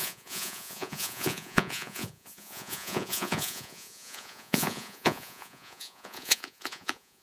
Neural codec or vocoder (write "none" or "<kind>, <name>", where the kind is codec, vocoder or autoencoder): vocoder, Vocos